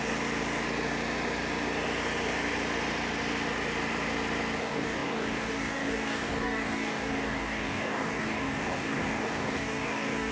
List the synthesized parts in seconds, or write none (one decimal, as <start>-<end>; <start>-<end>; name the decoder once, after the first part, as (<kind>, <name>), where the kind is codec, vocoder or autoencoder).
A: 4.6-10.3 (codec, DAC)